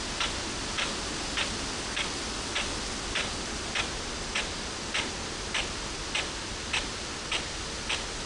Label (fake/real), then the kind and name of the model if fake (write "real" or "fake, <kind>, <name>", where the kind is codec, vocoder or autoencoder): real